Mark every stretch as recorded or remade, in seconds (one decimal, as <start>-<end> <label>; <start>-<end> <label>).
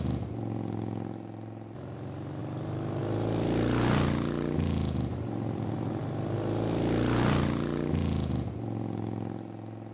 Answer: 0.0-2.4 recorded; 2.4-3.0 remade; 3.0-9.9 recorded